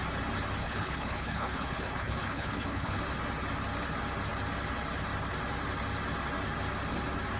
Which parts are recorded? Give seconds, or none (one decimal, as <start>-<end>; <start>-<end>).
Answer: 0.0-0.6; 3.0-7.4